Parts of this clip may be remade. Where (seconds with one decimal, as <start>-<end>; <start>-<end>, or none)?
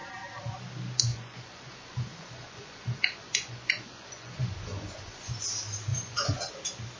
1.1-5.3; 5.9-6.5